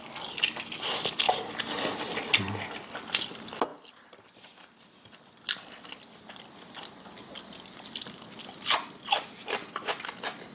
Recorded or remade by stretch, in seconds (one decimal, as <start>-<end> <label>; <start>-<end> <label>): 0.0-10.5 recorded